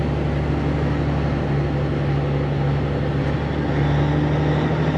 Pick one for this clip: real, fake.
real